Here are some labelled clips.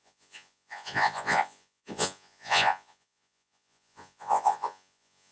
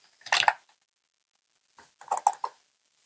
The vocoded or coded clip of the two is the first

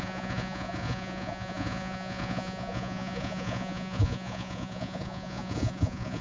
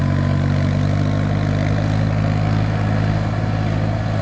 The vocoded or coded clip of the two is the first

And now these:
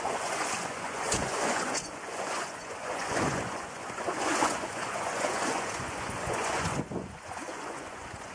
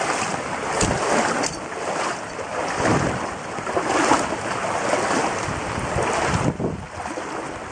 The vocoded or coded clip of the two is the first